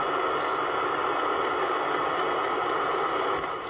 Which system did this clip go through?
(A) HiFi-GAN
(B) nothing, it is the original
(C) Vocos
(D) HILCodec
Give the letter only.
B